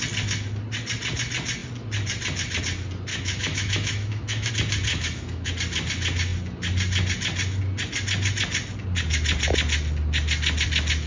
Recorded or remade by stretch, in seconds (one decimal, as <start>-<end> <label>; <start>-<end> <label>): 0.0-3.1 recorded; 3.1-4.5 remade; 4.5-4.9 recorded; 4.9-5.5 remade; 5.5-11.1 recorded